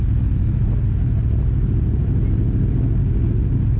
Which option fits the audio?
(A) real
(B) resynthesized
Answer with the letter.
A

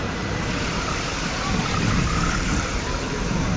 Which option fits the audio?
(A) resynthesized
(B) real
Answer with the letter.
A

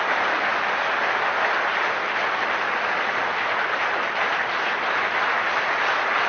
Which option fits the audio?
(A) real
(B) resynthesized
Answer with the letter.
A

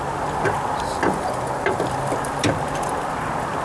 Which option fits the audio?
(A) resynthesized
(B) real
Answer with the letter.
B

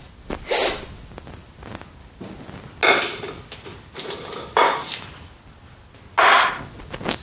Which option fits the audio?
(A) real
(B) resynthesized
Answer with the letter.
A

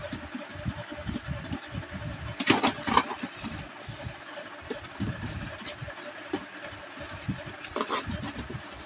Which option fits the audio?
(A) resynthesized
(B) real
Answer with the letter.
B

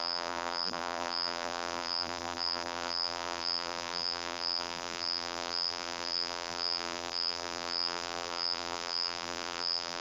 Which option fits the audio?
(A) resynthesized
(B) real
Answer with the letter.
A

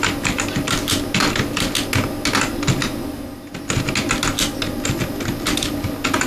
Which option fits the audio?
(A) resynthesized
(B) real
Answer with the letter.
B